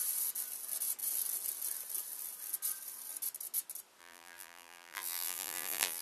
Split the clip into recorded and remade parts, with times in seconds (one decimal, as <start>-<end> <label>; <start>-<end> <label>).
0.0-4.0 recorded; 4.0-6.0 remade